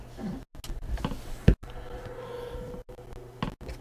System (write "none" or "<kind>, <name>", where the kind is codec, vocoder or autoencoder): none